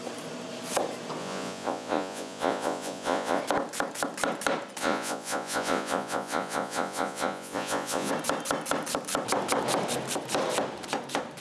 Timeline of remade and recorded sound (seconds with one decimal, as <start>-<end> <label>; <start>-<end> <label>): 0.0-1.2 recorded; 1.2-3.4 remade; 3.4-4.8 recorded; 4.8-8.1 remade; 8.1-11.4 recorded